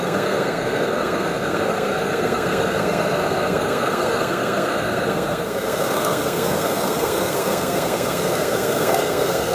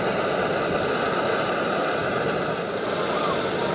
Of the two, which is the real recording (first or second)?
second